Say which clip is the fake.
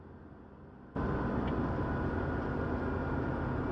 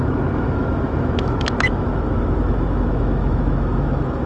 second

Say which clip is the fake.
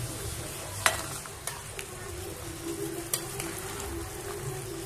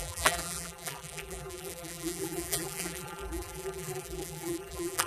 second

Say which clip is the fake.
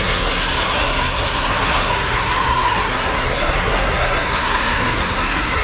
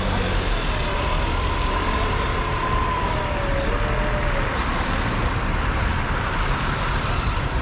first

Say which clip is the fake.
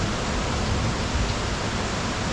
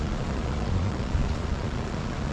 second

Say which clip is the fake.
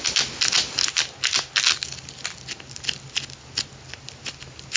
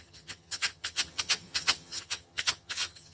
second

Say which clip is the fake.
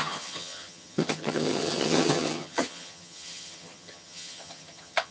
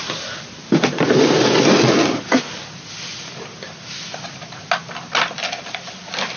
first